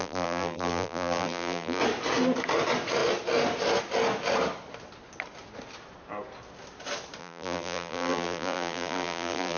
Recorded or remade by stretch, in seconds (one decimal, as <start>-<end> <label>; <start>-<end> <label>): 0.0-1.8 remade; 1.8-7.2 recorded; 7.2-9.6 remade